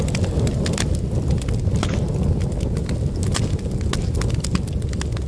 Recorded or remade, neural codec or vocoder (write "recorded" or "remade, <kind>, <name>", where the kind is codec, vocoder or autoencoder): recorded